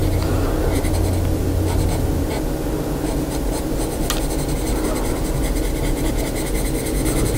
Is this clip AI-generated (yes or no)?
no